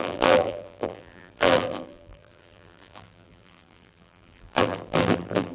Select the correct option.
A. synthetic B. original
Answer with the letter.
A